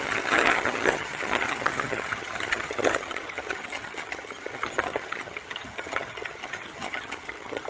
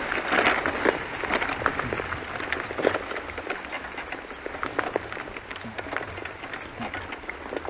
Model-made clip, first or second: first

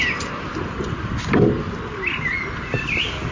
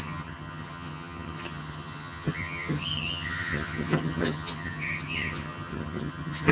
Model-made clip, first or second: second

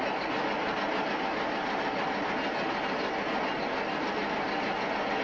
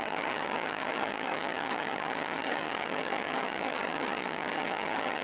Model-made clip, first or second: second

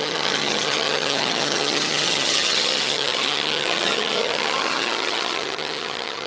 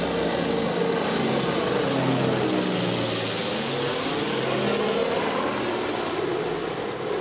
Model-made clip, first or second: first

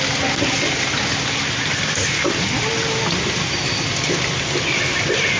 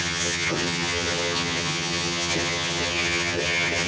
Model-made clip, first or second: second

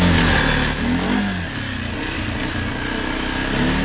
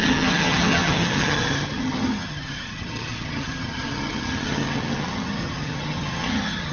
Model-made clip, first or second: second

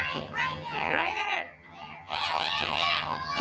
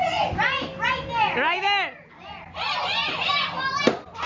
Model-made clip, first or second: first